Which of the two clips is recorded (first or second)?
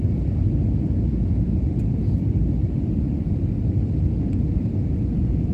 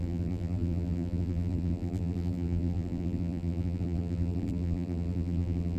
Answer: first